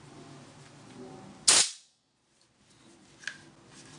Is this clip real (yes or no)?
yes